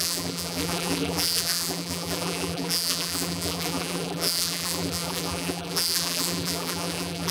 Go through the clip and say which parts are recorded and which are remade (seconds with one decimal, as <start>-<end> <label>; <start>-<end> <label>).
0.0-7.3 remade